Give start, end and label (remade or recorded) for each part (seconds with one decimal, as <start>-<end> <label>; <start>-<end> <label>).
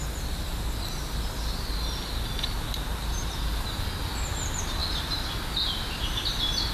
0.0-6.7 recorded